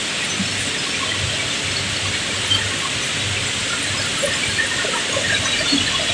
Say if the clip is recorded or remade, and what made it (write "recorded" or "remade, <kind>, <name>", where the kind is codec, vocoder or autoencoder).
recorded